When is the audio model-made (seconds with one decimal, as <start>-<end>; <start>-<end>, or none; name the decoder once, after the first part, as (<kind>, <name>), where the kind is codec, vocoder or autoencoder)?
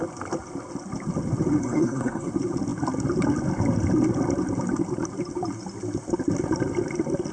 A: 1.6-2.3 (codec, SNAC)